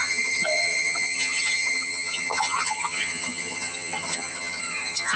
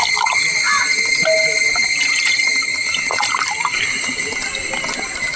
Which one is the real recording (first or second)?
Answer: second